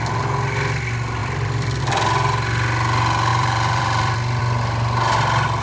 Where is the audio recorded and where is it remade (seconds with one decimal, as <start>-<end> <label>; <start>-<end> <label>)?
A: 0.0-1.2 recorded; 1.2-1.8 remade; 1.8-3.3 recorded; 3.3-4.4 remade; 4.4-5.6 recorded